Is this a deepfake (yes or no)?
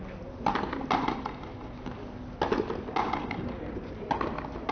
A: no